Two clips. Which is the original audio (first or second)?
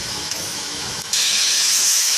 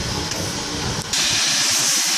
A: second